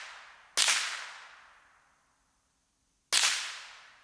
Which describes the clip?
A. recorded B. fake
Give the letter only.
A